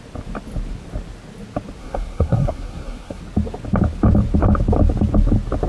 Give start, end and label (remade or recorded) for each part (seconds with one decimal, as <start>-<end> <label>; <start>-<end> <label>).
0.0-1.8 recorded; 1.8-3.2 remade; 3.2-5.7 recorded